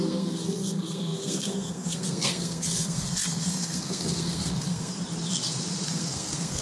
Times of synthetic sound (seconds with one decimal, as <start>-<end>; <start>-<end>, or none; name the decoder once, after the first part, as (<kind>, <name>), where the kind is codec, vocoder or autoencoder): 0.0-4.9 (codec, SNAC); 5.9-6.6